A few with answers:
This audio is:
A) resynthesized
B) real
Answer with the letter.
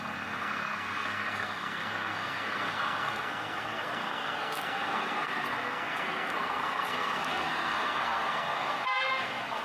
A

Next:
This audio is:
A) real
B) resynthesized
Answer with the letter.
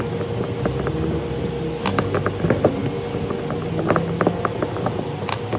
A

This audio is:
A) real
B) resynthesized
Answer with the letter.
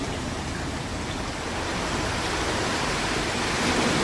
A